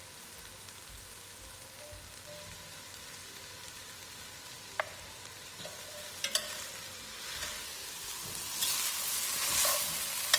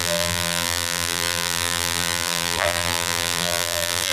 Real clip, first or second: first